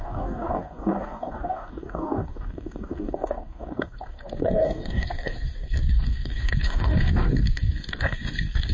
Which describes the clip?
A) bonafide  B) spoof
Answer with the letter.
B